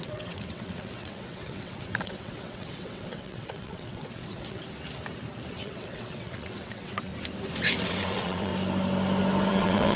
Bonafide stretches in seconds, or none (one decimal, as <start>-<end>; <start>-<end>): 4.6-5.5; 7.1-7.8; 8.5-9.5